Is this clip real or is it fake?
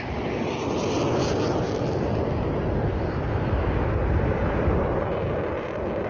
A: real